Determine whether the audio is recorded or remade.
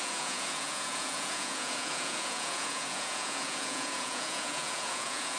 remade